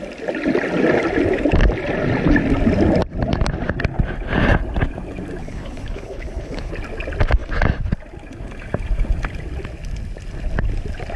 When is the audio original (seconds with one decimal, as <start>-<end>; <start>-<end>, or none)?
0.0-5.4; 6.7-11.2